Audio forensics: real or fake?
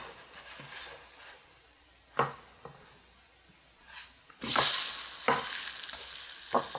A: real